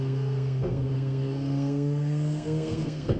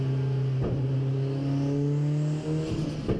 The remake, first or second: first